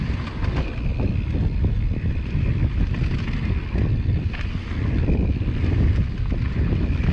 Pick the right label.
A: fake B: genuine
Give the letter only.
B